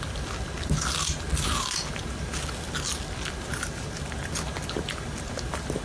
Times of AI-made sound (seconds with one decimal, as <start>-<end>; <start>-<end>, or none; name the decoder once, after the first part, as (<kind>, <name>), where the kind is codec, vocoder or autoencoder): 3.5-4.0 (vocoder, BigVGAN v2)